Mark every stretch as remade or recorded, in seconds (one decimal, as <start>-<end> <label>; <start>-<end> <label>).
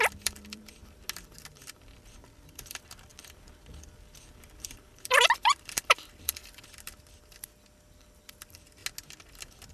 0.0-0.8 remade; 0.8-1.6 recorded; 1.6-6.4 remade; 6.4-7.2 recorded; 7.2-8.8 remade; 8.8-9.7 recorded